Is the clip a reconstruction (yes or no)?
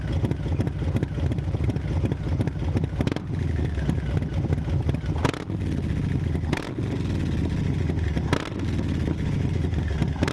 no